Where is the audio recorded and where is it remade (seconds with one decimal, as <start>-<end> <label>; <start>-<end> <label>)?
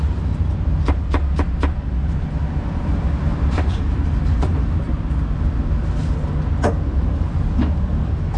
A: 0.0-3.3 recorded; 3.3-4.8 remade; 4.8-8.4 recorded